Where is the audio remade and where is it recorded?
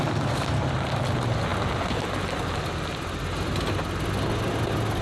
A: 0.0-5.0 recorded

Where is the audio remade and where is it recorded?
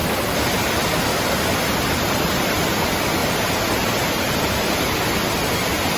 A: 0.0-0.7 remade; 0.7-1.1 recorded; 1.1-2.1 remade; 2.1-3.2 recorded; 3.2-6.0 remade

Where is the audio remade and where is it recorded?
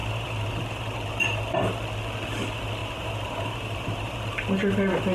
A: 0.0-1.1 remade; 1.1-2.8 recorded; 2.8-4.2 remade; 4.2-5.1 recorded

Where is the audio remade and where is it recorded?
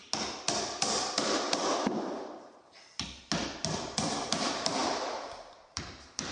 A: 0.0-3.8 recorded; 3.8-6.3 remade